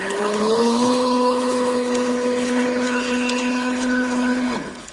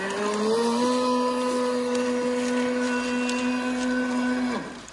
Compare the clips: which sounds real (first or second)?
second